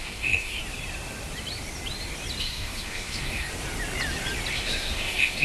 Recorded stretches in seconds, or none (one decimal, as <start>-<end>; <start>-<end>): 0.6-2.4; 3.5-4.5